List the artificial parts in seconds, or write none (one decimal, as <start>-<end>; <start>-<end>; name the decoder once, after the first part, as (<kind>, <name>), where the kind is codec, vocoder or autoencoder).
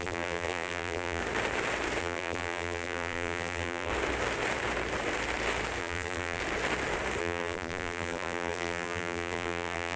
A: 0.0-1.2 (vocoder, BigVGAN v2); 2.0-3.9; 5.8-6.4; 7.2-10.0